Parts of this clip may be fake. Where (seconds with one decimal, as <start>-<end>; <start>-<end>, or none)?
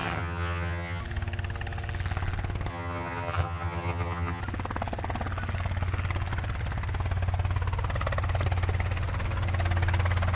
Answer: 0.0-1.0; 2.7-4.4